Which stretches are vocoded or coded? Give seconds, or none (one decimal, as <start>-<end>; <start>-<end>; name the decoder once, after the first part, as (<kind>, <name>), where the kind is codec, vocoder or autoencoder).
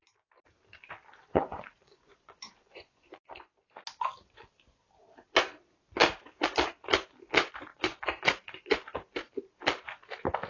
1.3-3.3 (vocoder, Vocos); 7.7-8.8